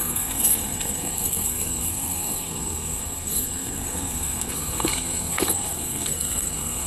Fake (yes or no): yes